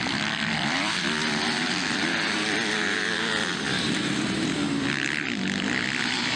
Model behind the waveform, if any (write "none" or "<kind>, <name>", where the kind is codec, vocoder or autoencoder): vocoder, BigVGAN v2